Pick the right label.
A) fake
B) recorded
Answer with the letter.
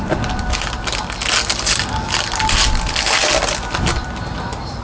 B